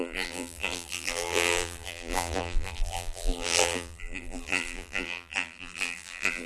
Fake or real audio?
fake